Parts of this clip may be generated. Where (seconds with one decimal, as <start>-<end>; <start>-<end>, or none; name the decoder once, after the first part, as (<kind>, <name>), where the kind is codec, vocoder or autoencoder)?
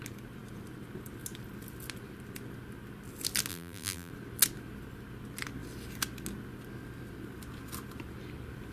3.5-4.1 (vocoder, BigVGAN v2)